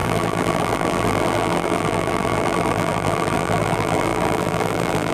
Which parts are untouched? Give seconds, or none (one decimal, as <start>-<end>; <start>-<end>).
none